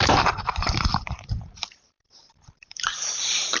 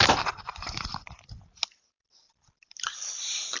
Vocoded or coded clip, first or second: first